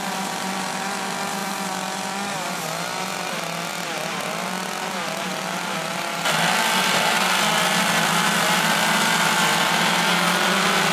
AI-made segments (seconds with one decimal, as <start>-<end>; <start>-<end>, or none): none